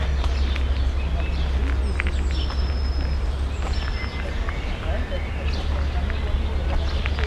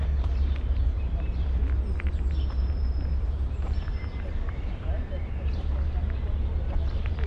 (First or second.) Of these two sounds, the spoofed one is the second